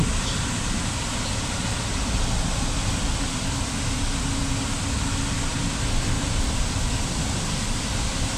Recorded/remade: recorded